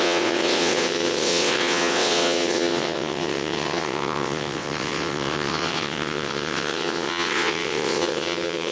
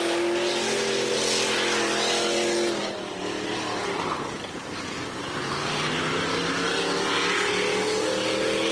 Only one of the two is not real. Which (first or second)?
first